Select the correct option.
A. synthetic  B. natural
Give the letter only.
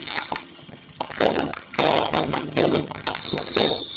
A